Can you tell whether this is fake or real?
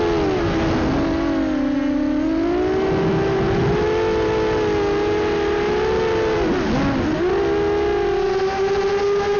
real